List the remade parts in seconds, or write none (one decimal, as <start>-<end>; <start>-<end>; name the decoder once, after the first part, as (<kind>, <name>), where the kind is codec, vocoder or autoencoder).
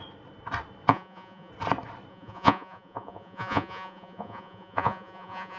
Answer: 0.9-1.5 (vocoder, Vocos); 2.1-5.6